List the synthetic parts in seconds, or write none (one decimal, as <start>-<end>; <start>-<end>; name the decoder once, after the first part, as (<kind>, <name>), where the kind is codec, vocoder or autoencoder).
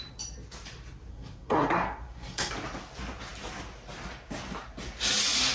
1.1-2.5 (codec, SNAC)